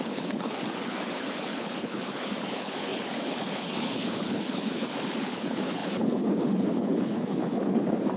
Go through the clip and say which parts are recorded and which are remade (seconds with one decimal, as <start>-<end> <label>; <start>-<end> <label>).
0.0-8.2 remade